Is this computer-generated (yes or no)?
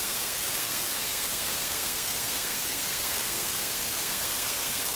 yes